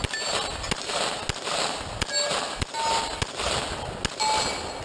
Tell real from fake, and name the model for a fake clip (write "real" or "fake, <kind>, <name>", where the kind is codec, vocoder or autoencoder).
real